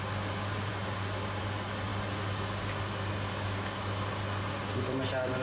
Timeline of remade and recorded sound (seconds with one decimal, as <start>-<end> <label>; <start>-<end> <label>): 0.0-5.4 recorded

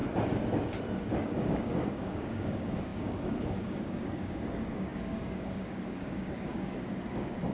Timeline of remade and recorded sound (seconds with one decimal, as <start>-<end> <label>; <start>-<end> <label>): 0.0-1.1 recorded; 1.1-7.5 remade

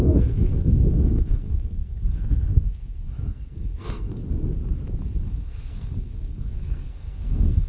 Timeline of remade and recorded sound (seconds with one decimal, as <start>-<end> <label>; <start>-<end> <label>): 0.0-4.2 remade; 4.2-5.3 recorded; 5.3-7.7 remade

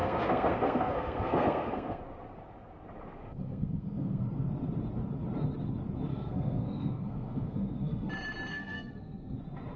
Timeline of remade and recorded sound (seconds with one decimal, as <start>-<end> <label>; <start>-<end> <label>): 0.0-2.0 remade; 2.0-3.2 recorded; 3.2-4.2 remade; 4.2-6.1 recorded; 6.1-8.1 remade; 8.1-8.5 recorded; 8.5-9.4 remade; 9.4-9.8 recorded

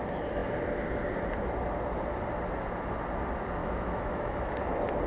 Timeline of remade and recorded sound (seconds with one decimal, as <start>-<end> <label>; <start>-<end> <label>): 0.0-3.6 recorded; 3.6-4.6 remade; 4.6-5.1 recorded

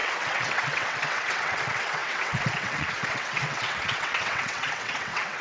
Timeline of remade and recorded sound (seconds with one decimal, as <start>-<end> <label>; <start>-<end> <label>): 0.0-5.4 remade

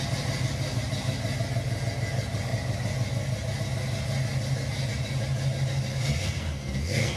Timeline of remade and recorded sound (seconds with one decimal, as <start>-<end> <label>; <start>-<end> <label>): 0.0-5.9 recorded; 5.9-7.2 remade

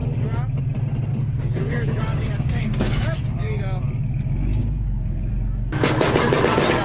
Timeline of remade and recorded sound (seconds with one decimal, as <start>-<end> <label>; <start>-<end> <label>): 0.0-1.1 recorded; 1.1-3.8 remade; 3.8-4.6 recorded; 4.6-5.3 remade; 5.3-6.8 recorded